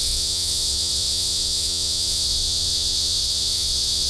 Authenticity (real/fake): fake